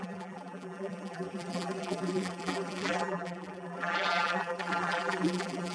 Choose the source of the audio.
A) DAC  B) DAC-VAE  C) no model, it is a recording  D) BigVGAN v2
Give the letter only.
D